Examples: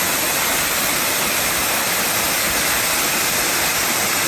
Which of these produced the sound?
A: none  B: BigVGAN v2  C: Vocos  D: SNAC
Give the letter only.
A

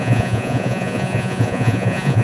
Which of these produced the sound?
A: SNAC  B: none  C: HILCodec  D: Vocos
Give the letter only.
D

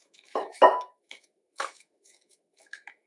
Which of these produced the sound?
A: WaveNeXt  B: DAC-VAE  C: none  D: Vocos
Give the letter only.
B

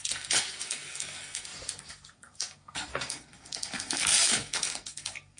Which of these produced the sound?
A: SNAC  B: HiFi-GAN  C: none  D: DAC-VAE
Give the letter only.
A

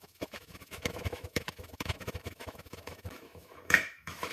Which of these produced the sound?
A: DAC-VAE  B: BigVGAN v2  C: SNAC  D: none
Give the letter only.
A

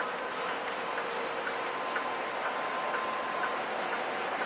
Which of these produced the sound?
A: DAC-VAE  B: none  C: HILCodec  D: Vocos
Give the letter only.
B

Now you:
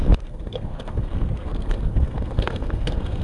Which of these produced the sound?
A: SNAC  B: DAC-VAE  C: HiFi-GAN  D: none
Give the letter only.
A